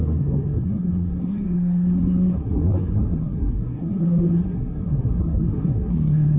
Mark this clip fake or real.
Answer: fake